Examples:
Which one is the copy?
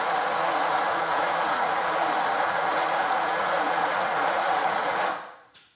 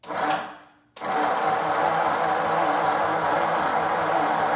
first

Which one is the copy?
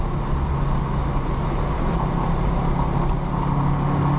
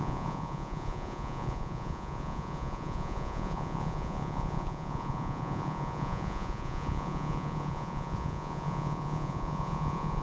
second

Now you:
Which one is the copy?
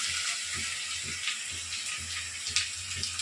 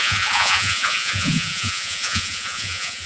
second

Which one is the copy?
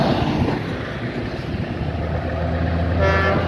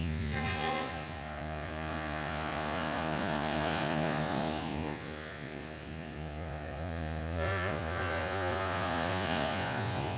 second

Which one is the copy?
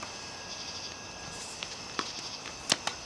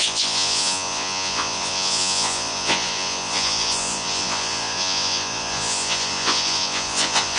second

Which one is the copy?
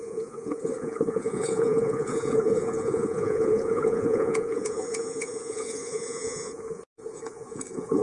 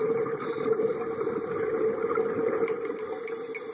first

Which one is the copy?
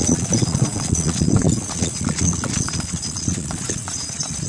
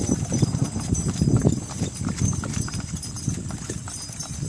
first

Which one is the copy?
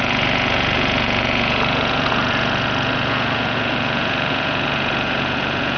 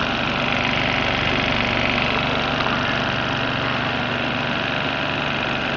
first